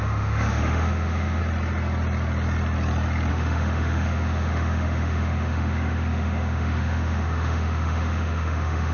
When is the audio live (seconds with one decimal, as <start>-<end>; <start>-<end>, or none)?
1.4-3.3